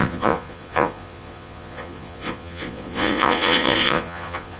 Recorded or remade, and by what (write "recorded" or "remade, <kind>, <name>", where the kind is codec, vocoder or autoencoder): remade, vocoder, Vocos